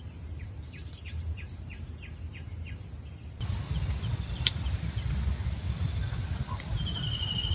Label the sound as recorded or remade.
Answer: recorded